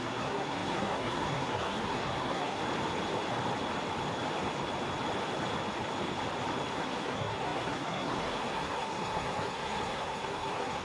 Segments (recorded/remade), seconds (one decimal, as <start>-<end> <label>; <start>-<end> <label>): 0.0-2.6 remade; 2.6-6.7 recorded; 6.7-10.8 remade